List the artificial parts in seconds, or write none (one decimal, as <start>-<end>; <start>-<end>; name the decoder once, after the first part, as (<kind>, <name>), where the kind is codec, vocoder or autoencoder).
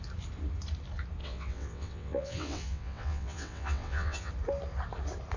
1.2-4.3 (vocoder, WaveNeXt)